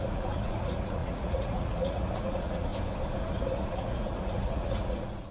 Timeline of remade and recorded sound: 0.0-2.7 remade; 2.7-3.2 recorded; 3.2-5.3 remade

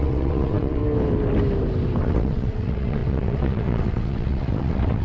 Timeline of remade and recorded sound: 0.0-0.8 remade; 0.8-2.0 recorded; 2.0-5.0 remade

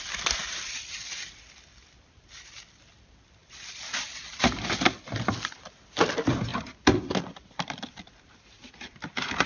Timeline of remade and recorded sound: 0.0-3.4 remade; 3.4-4.2 recorded; 4.2-6.5 remade; 6.5-7.6 recorded; 7.6-9.5 remade

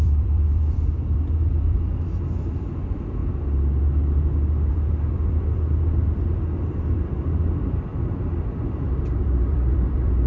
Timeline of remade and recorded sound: 0.0-3.2 remade; 3.2-4.7 recorded; 4.7-7.9 remade; 7.9-8.9 recorded; 8.9-10.3 remade

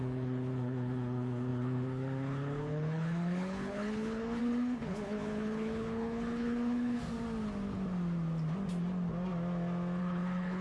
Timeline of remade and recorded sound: 0.0-7.0 remade; 7.0-10.0 recorded; 10.0-10.6 remade